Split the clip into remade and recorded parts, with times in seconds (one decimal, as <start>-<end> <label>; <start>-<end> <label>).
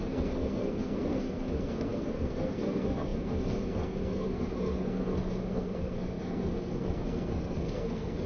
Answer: 0.0-8.3 remade